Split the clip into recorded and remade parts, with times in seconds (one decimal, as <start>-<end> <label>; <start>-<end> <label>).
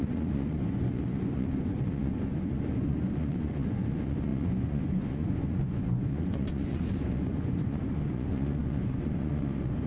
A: 0.0-9.9 remade